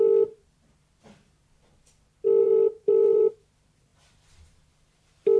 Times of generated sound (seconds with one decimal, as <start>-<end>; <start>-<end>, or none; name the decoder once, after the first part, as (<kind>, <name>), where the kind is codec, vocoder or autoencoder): 2.4-3.3 (vocoder, BigVGAN v2)